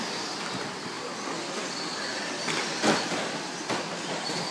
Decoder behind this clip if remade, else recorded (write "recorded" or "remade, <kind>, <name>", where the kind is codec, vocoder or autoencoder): recorded